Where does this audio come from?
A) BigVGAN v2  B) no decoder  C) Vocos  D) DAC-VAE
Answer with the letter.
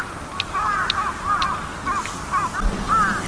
B